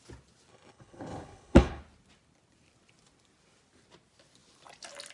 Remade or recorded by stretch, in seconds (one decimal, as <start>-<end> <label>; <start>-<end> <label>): 0.0-0.5 recorded; 0.5-1.8 remade; 1.8-5.1 recorded